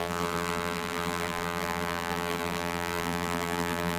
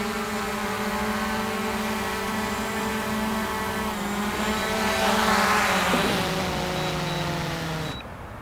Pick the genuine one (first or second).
second